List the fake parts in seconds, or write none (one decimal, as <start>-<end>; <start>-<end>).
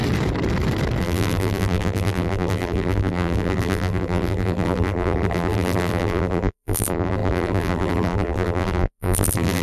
1.0-9.6